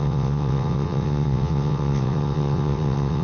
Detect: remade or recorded remade